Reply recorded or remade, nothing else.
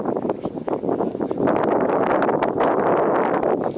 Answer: recorded